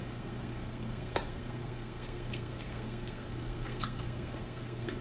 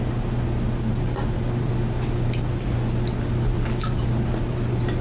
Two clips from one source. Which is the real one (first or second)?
second